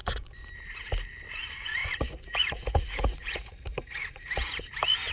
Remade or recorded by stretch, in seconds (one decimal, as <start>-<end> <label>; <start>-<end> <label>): 0.0-0.5 remade; 0.5-1.8 recorded; 1.8-4.6 remade; 4.6-5.1 recorded